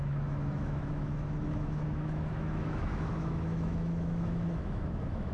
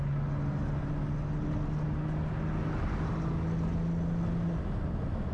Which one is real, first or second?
second